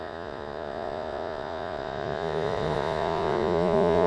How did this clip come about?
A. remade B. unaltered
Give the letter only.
A